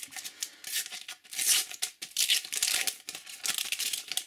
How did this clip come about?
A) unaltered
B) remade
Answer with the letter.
A